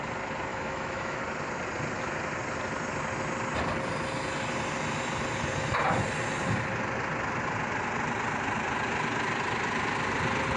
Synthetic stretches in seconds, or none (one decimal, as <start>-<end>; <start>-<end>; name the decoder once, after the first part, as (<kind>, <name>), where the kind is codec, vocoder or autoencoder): 0.5-1.2 (autoencoder, DAC-VAE)